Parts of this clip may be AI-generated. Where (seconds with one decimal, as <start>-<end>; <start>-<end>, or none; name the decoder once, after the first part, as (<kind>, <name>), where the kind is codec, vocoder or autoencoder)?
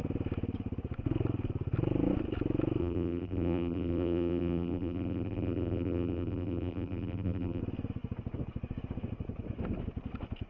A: 2.8-7.6 (vocoder, BigVGAN v2)